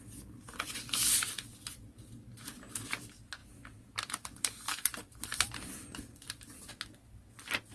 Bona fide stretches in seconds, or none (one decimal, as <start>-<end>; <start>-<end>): 0.0-3.4; 6.7-7.7